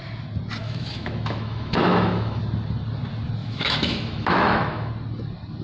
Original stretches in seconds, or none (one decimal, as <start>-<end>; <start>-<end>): 0.0-0.6; 2.4-3.4; 4.9-5.6